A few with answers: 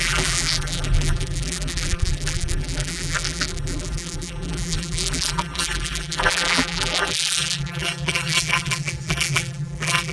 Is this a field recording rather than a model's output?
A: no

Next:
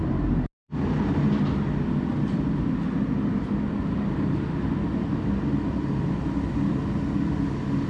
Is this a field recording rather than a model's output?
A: yes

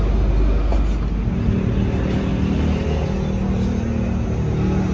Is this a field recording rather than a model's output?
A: yes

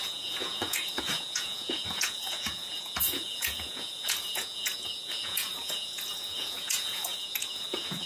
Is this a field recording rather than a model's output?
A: no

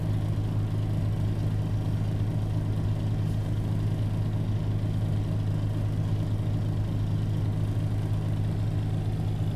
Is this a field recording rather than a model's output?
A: yes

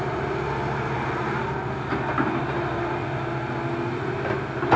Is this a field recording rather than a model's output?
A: yes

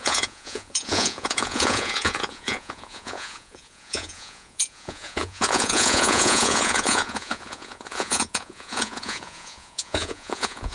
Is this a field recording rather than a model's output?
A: no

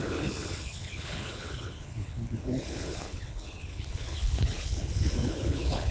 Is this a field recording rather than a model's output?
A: no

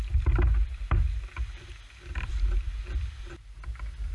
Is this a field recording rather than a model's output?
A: yes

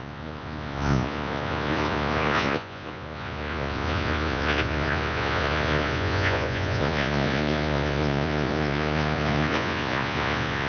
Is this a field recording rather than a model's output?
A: no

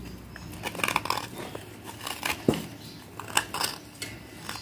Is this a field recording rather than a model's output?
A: yes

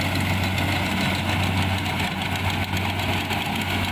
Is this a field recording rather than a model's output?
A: yes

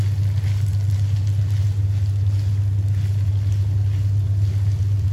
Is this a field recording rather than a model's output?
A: yes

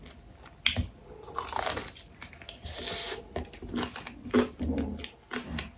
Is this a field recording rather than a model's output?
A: yes